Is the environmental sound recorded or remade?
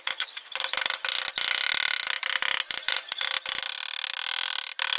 recorded